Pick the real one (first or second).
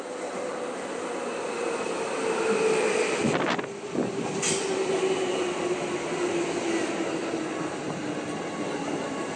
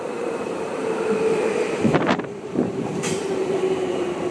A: first